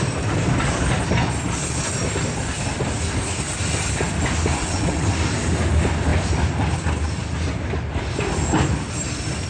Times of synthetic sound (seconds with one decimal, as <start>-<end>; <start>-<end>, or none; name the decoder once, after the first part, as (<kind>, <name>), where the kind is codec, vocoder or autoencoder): 4.6-5.1 (vocoder, WaveNeXt)